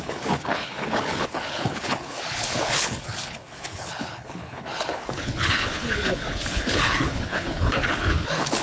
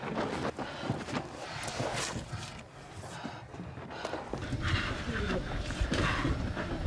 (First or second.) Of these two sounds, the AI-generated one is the first